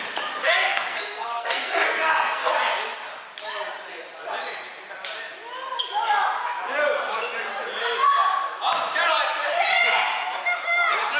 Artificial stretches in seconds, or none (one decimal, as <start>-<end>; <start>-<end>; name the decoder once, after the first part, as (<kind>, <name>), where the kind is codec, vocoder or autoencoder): 0.4-2.5 (codec, SNAC)